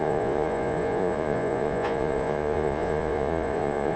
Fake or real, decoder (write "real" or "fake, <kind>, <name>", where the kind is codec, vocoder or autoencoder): fake, vocoder, Vocos